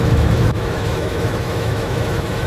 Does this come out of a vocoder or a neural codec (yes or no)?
yes